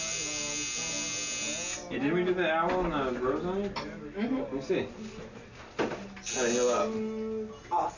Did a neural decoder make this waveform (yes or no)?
no